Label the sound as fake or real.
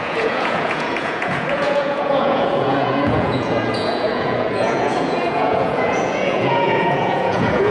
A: fake